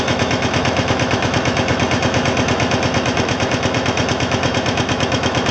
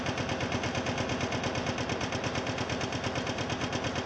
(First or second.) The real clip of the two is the second